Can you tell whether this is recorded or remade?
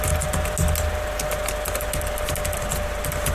recorded